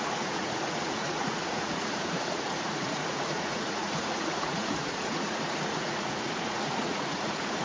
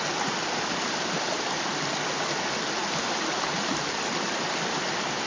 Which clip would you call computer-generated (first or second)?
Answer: first